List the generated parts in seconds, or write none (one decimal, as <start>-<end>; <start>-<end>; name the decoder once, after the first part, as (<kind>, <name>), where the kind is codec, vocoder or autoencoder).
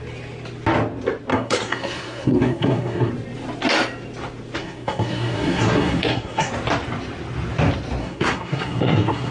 1.3-3.1 (codec, SNAC); 4.6-6.5; 8.0-9.3